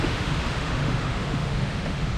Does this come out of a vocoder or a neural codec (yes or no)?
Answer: yes